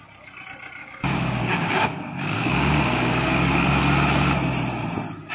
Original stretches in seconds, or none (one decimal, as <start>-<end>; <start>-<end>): 0.0-0.8; 3.8-5.3